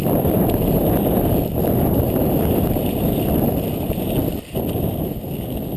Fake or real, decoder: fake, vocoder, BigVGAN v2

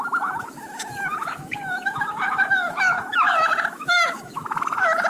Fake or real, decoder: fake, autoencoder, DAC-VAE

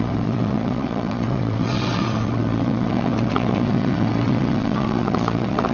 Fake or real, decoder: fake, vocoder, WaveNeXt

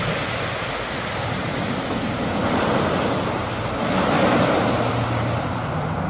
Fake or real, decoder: real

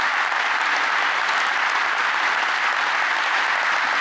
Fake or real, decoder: real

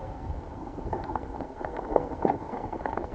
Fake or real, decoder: fake, codec, SNAC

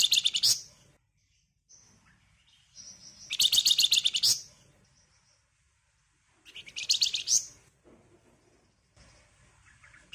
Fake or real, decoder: real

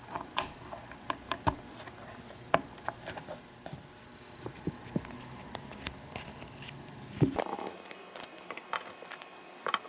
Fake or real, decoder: real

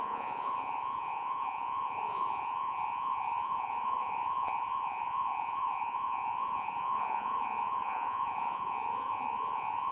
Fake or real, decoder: fake, vocoder, Vocos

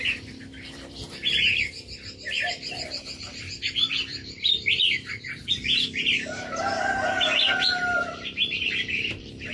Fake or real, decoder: fake, vocoder, BigVGAN v2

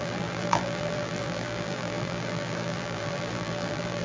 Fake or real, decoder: fake, vocoder, BigVGAN v2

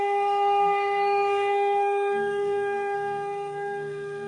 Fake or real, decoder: fake, codec, SNAC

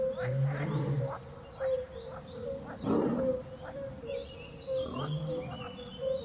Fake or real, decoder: real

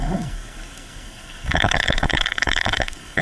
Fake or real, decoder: fake, codec, SNAC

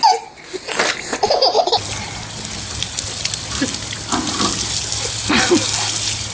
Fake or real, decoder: real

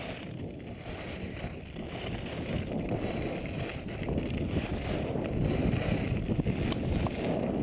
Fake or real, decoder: real